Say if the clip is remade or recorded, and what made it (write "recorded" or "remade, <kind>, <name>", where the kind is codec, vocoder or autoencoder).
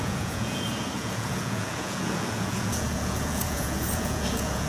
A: remade, vocoder, Vocos